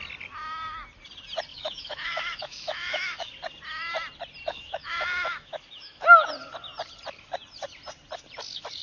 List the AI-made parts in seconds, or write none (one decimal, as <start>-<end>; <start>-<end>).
1.5-3.3; 4.5-6.3